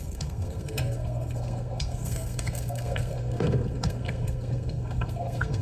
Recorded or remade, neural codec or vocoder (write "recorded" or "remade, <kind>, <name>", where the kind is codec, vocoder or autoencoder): remade, codec, SNAC